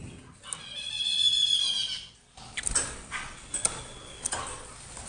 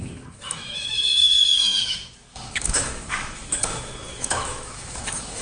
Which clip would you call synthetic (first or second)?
second